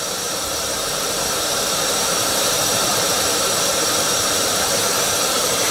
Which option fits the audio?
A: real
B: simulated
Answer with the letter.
B